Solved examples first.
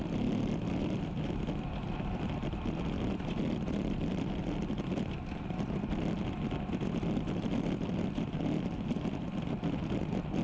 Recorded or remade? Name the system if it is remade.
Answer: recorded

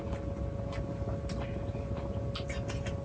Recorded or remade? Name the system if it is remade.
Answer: recorded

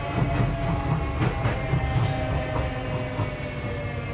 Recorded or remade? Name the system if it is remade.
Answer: recorded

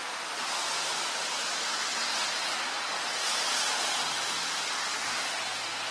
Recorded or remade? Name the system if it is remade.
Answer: recorded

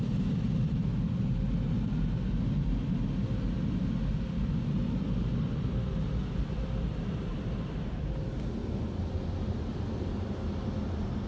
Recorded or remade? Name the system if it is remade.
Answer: recorded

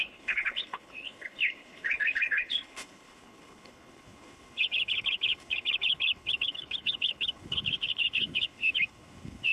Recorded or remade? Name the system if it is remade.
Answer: remade, codec, HILCodec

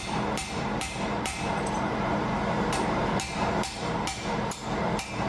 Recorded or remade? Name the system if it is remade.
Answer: remade, vocoder, BigVGAN v2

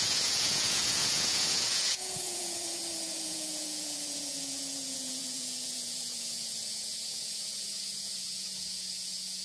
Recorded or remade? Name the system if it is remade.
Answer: remade, vocoder, Vocos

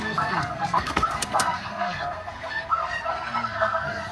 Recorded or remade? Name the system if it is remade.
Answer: remade, codec, SNAC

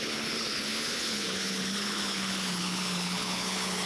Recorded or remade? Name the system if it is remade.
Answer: remade, codec, HILCodec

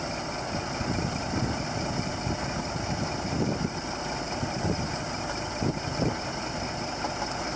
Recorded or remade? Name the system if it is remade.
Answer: recorded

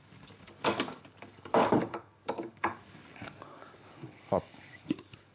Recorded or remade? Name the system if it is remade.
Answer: remade, codec, DAC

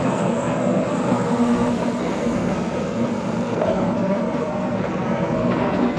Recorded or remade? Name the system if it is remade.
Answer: remade, codec, SNAC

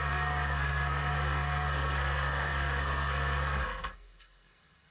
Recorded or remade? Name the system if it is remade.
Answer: remade, codec, SNAC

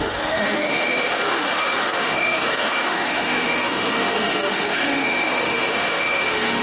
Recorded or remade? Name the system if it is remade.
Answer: remade, autoencoder, DAC-VAE